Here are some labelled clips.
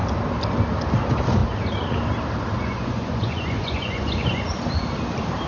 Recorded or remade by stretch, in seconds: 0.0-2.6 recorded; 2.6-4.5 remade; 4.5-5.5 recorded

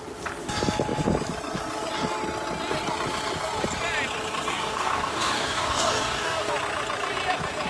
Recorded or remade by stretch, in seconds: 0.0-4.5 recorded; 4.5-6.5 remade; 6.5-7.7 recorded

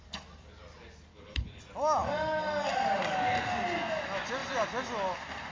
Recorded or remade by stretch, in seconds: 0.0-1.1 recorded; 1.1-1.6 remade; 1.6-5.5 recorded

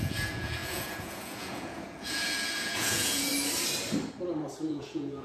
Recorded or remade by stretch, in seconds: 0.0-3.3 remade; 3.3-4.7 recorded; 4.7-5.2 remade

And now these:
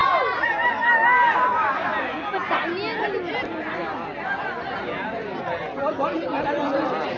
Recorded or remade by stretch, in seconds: 0.0-7.2 recorded

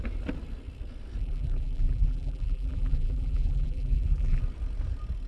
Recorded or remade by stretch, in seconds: 0.0-1.2 recorded; 1.2-4.4 remade; 4.4-5.3 recorded

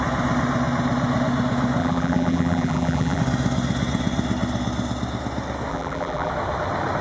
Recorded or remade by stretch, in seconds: 0.0-1.8 recorded; 1.8-3.2 remade; 3.2-5.7 recorded; 5.7-6.3 remade; 6.3-7.0 recorded